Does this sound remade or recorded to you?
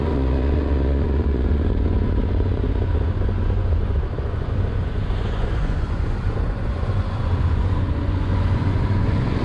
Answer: remade